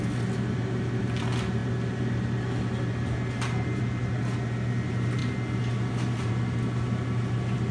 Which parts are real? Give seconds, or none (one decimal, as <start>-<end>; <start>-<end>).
0.0-7.7